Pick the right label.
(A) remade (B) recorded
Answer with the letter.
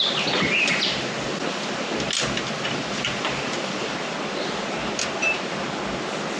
B